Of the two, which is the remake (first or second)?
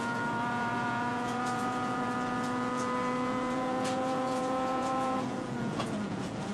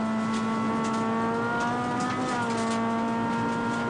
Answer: first